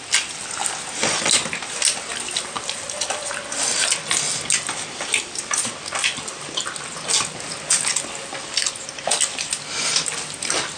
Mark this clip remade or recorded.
recorded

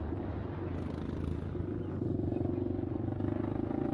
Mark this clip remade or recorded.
recorded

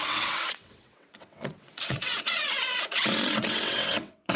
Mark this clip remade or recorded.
remade